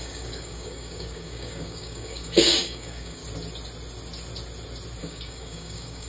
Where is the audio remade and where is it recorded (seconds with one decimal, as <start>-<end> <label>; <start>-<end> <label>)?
0.0-3.2 remade; 3.2-5.0 recorded; 5.0-6.1 remade